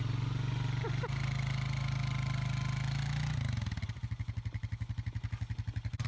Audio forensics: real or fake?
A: real